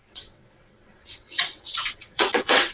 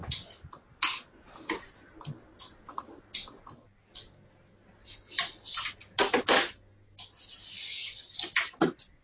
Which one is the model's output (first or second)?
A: first